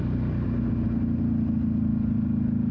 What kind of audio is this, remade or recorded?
recorded